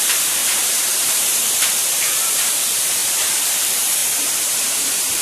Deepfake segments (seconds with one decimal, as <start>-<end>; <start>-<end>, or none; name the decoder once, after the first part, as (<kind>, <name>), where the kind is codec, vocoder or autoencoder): 0.0-5.2 (vocoder, BigVGAN v2)